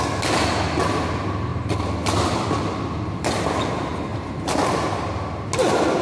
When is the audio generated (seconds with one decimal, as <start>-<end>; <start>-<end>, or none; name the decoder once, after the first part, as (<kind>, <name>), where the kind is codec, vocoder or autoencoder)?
4.1-4.7 (vocoder, BigVGAN v2)